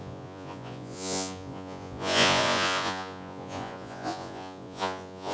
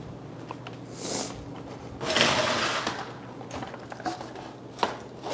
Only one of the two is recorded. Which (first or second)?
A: second